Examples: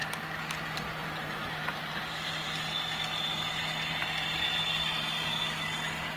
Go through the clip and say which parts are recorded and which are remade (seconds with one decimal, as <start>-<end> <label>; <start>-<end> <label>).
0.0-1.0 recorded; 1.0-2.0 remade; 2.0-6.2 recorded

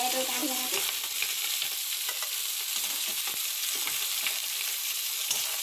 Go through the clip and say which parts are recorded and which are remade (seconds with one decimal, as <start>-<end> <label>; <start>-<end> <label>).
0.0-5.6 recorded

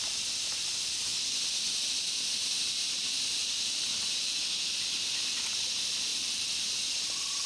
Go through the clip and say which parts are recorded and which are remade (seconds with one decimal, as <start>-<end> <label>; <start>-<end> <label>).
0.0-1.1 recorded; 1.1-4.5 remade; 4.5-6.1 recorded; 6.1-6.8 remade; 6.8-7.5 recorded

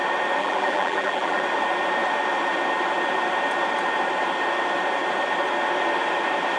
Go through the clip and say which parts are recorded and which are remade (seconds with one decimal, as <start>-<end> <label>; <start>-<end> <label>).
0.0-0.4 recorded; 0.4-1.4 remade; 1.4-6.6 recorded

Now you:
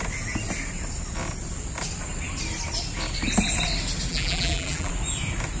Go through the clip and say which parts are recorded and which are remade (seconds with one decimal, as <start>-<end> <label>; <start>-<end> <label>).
0.0-4.1 recorded; 4.1-4.9 remade; 4.9-5.6 recorded

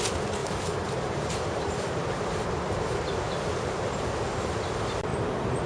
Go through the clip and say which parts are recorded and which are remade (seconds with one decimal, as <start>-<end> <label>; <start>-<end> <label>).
0.0-0.4 recorded; 0.4-3.0 remade; 3.0-5.1 recorded; 5.1-5.7 remade